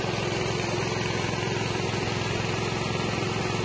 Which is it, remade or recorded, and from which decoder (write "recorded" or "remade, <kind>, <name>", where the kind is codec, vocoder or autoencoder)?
recorded